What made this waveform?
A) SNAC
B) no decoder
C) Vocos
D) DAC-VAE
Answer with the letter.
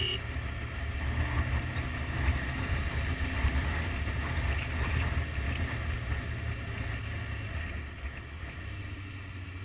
B